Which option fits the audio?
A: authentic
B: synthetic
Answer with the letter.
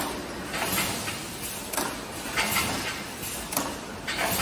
A